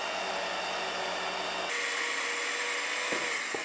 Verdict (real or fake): real